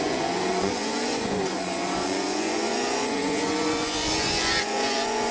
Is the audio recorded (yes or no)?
no